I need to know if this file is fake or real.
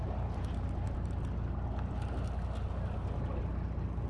real